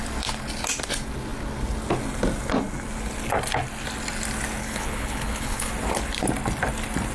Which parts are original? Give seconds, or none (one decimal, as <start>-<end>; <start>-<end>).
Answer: 0.0-4.6; 5.7-7.1